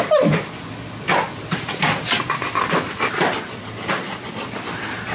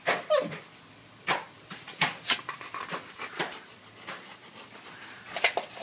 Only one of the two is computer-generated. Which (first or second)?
second